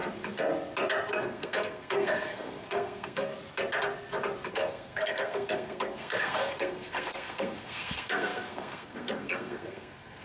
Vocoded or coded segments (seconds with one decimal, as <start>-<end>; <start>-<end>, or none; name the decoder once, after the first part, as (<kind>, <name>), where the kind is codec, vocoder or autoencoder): 1.1-3.3 (codec, SNAC); 4.5-10.2